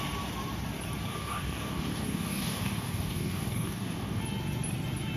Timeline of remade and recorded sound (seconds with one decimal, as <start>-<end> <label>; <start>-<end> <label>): 0.0-1.1 recorded; 1.1-4.2 remade; 4.2-5.2 recorded